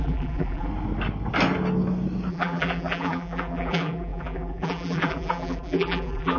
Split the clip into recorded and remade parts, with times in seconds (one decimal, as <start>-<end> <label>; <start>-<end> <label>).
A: 0.0-0.7 remade; 0.7-2.3 recorded; 2.3-6.4 remade